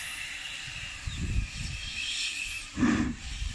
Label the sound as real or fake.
fake